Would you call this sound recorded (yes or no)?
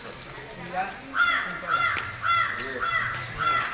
yes